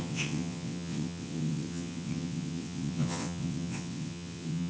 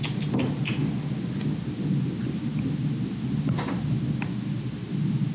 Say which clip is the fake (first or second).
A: first